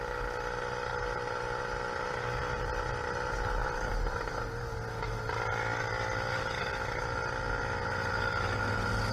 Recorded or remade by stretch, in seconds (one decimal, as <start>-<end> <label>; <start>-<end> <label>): 0.0-9.1 recorded